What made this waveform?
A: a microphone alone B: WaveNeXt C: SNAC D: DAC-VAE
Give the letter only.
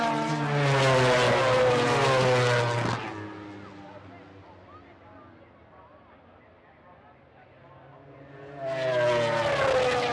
A